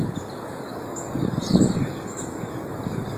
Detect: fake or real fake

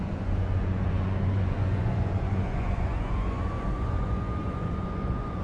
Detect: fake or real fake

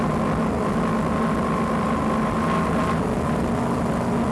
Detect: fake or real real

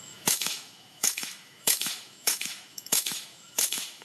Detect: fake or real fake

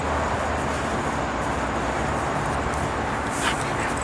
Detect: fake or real real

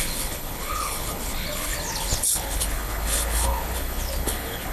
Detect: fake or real fake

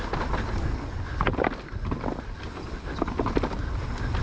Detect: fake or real real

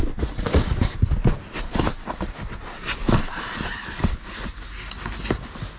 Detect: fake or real real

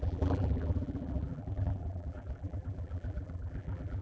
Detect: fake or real fake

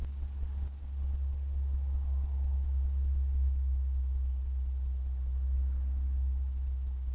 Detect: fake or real real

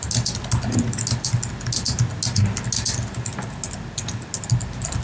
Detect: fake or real real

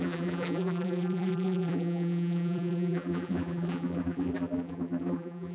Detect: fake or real fake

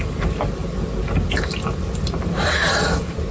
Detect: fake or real real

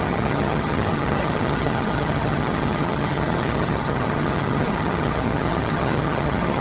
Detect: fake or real fake